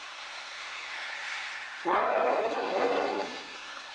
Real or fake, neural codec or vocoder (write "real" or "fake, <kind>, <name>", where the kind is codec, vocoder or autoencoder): fake, codec, SNAC